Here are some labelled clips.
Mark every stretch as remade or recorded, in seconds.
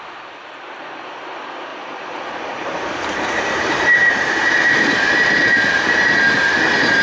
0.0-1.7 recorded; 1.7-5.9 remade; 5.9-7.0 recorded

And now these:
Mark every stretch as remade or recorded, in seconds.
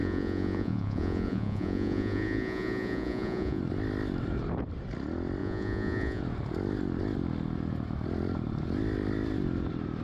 0.0-3.6 remade; 3.6-5.4 recorded; 5.4-6.2 remade; 6.2-10.0 recorded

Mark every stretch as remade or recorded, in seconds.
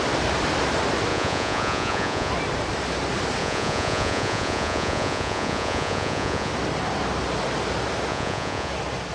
0.0-1.1 recorded; 1.1-2.3 remade; 2.3-3.4 recorded; 3.4-6.5 remade; 6.5-8.1 recorded; 8.1-8.7 remade; 8.7-9.1 recorded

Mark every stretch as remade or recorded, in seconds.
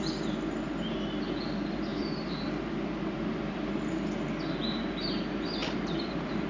0.0-1.9 recorded; 1.9-3.7 remade; 3.7-5.6 recorded; 5.6-6.5 remade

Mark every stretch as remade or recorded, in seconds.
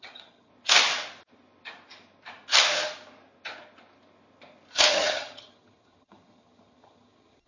0.0-0.5 remade; 0.5-4.9 recorded; 4.9-7.5 remade